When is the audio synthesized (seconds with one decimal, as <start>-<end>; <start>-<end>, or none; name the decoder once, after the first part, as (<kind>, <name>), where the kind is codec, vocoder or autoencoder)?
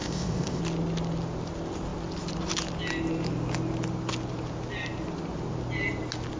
0.0-0.6 (codec, ZipCodec)